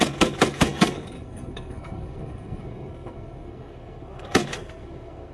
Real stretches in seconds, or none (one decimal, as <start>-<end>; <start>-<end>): none